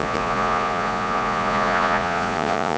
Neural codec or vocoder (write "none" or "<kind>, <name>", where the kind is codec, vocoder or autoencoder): vocoder, Vocos